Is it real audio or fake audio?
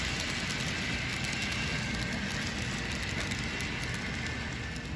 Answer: real